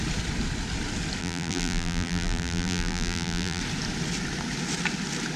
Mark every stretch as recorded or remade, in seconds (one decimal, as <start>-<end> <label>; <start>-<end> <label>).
0.0-1.2 recorded; 1.2-3.6 remade; 3.6-5.4 recorded